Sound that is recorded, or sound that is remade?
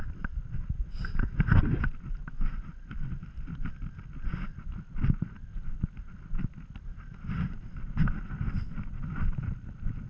recorded